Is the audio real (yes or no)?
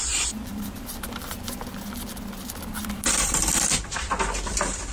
no